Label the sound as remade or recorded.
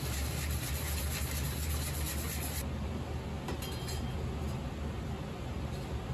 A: recorded